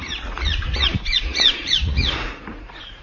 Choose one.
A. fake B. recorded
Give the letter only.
A